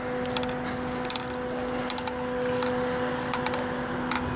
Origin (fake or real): real